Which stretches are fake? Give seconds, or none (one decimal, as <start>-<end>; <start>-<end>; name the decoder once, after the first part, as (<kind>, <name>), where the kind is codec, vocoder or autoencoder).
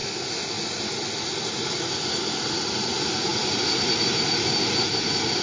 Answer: 1.8-5.4 (vocoder, BigVGAN v2)